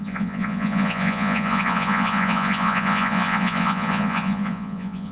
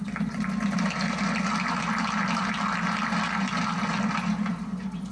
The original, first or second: second